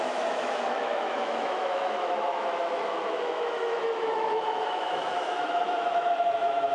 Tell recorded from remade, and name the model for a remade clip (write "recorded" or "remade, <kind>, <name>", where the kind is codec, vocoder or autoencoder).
remade, autoencoder, DAC-VAE